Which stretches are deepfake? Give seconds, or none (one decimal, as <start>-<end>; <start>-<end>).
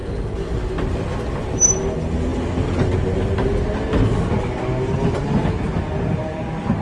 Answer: none